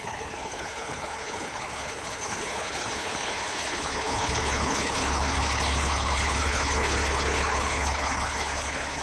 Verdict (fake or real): fake